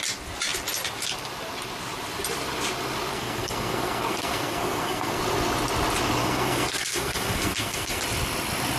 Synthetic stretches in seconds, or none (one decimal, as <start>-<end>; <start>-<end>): 3.1-5.2; 6.2-8.0